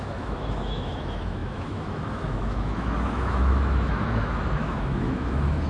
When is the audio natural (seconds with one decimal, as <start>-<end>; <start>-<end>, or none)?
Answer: none